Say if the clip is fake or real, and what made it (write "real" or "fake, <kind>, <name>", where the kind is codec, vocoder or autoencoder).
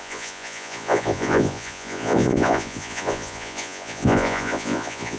fake, vocoder, Vocos